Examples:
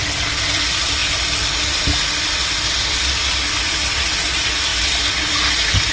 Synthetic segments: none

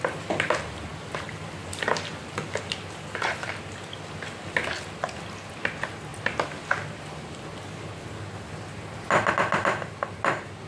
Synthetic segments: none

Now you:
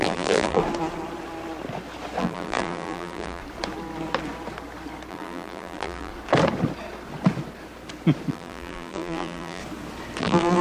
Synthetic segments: 0.0-0.6 (vocoder, BigVGAN v2); 2.2-3.4; 5.1-6.1; 8.3-9.6; 10.2-10.6

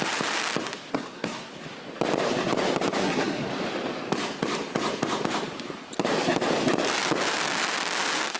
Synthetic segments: 0.9-1.5 (codec, SNAC); 3.0-3.5

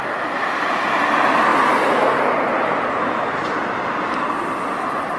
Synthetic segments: none